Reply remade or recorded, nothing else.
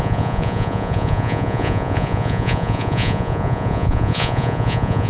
remade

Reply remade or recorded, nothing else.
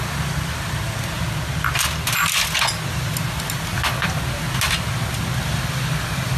recorded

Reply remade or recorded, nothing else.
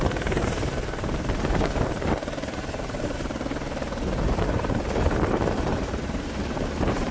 remade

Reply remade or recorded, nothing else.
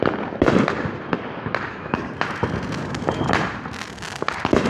recorded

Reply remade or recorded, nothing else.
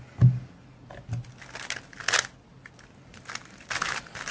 recorded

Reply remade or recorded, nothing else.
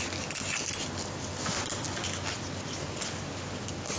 recorded